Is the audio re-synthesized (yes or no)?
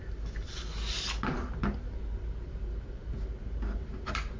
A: no